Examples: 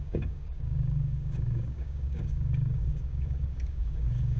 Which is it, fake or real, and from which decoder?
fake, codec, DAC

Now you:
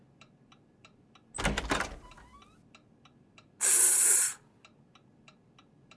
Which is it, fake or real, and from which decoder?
real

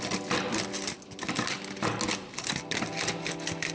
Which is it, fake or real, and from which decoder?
real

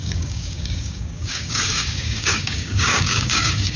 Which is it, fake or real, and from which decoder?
fake, codec, DAC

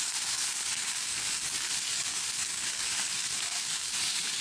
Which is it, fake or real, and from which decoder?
fake, codec, DAC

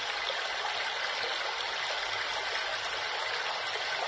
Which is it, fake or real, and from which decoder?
real